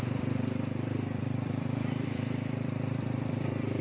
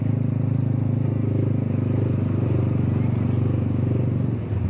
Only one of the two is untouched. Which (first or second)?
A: second